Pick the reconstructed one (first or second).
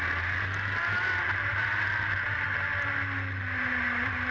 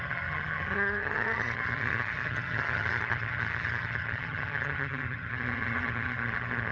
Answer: second